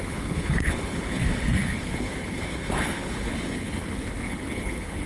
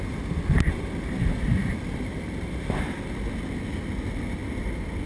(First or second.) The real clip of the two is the second